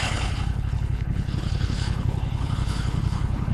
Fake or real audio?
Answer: fake